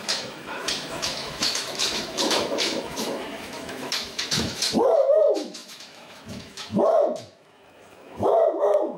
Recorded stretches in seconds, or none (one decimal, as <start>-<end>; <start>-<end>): none